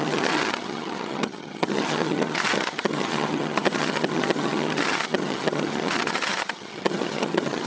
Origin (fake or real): fake